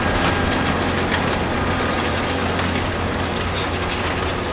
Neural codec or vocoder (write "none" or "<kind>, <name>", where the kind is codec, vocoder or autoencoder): none